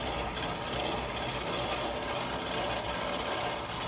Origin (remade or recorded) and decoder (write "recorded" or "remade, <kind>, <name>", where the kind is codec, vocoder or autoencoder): recorded